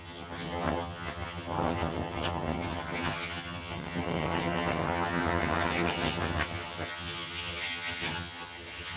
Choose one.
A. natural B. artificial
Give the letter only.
B